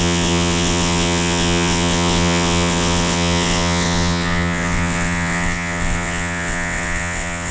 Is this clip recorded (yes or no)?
no